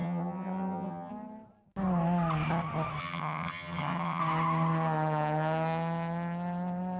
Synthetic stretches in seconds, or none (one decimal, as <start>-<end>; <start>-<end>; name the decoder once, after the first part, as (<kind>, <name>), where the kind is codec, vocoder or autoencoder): 0.0-1.1 (vocoder, HiFi-GAN); 3.0-4.2